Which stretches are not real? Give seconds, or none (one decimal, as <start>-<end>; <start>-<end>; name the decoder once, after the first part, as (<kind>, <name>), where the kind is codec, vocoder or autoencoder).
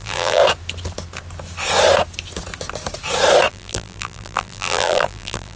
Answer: 0.0-0.4 (vocoder, BigVGAN v2); 3.5-5.6